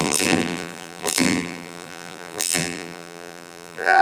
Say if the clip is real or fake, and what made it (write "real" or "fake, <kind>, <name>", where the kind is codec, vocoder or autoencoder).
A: fake, vocoder, BigVGAN v2